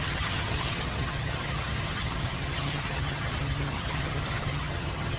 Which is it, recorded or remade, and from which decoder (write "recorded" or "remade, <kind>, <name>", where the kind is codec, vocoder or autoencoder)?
remade, vocoder, HiFi-GAN